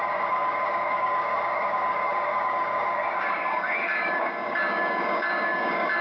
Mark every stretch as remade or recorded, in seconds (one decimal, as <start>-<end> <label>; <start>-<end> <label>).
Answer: 0.0-6.0 remade